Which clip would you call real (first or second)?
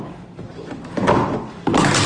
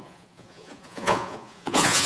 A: first